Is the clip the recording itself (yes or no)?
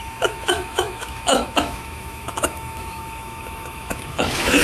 no